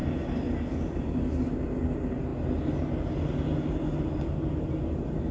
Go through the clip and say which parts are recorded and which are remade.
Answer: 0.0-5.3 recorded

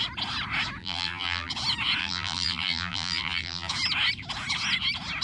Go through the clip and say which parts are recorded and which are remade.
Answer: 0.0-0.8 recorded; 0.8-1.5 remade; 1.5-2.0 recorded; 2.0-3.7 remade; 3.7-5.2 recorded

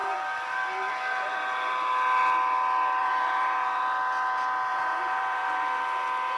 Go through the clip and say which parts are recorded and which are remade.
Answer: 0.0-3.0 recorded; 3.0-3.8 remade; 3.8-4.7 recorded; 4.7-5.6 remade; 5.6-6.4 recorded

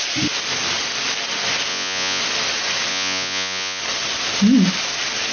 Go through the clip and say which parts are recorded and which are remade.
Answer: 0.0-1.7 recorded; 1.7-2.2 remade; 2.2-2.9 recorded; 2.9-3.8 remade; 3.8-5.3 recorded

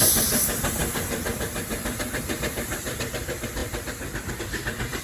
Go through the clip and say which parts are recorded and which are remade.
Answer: 0.0-5.0 remade

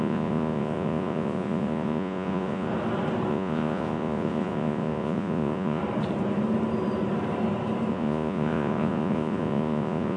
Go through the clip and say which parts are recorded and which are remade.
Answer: 0.0-2.7 remade; 2.7-3.3 recorded; 3.3-5.8 remade; 5.8-7.9 recorded; 7.9-10.2 remade

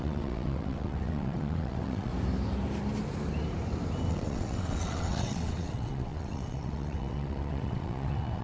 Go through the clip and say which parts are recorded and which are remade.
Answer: 0.0-2.1 remade; 2.1-4.1 recorded; 4.1-8.4 remade

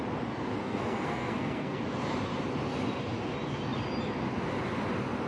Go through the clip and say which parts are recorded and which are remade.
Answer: 0.0-0.6 recorded; 0.6-1.8 remade; 1.8-5.3 recorded